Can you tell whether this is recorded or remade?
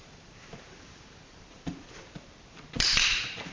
remade